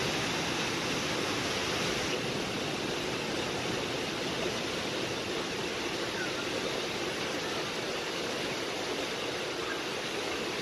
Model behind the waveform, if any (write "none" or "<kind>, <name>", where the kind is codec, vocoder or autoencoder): none